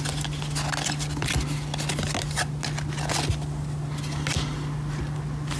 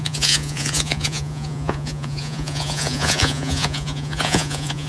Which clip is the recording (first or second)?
first